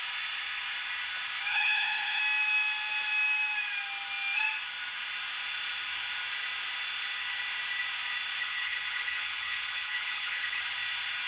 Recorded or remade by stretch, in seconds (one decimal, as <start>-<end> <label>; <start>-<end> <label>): 0.0-1.5 recorded; 1.5-2.2 remade; 2.2-8.4 recorded; 8.4-10.6 remade; 10.6-11.3 recorded